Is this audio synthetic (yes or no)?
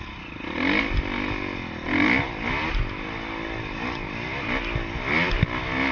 no